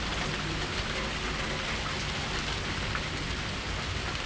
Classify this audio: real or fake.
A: real